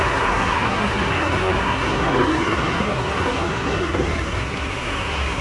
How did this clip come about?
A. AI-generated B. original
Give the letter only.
A